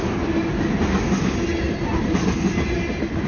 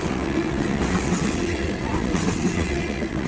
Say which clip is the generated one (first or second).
second